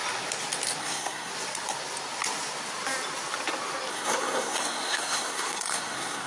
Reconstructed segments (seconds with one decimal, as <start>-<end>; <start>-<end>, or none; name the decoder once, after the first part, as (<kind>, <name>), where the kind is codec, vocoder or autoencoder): 0.8-1.3 (codec, SNAC); 3.9-6.3